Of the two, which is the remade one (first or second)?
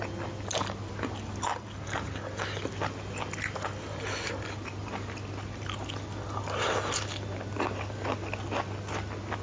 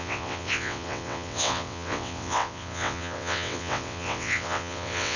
second